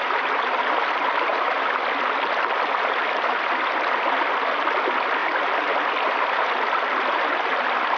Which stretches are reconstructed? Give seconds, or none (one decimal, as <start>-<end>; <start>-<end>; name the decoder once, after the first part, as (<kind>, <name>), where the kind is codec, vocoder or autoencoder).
none